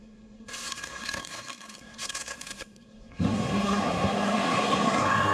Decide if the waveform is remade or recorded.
remade